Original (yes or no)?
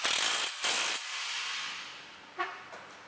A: yes